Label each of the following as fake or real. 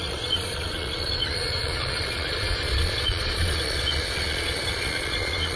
fake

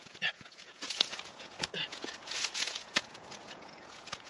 fake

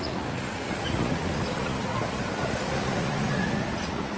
fake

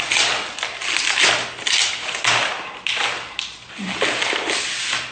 real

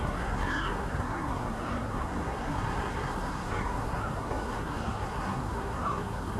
fake